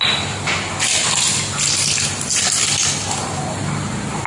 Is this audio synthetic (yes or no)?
no